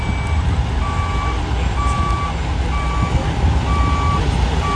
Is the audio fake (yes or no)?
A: no